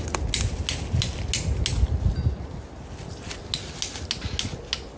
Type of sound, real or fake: real